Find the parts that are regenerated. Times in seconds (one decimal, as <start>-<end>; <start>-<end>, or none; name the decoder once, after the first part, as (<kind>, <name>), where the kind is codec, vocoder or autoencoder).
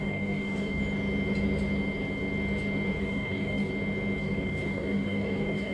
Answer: 0.0-0.8 (codec, DAC); 3.0-3.7; 4.2-5.7